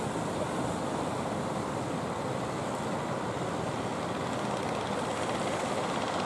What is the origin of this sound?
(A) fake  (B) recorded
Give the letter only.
B